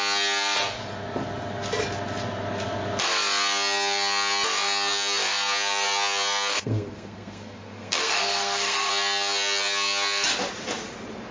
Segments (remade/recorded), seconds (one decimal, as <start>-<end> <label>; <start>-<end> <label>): 0.0-6.5 recorded; 6.5-8.9 remade; 8.9-11.3 recorded

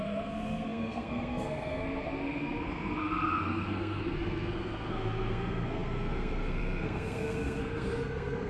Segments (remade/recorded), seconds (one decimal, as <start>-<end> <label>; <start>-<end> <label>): 0.0-8.5 remade

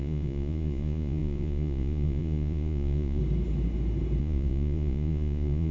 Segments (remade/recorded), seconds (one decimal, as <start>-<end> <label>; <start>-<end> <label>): 0.0-3.2 remade; 3.2-4.2 recorded; 4.2-5.7 remade

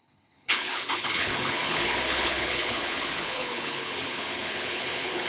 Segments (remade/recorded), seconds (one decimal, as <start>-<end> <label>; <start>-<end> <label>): 0.0-5.3 remade